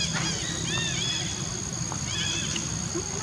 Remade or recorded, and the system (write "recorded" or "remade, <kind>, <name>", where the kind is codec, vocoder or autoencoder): recorded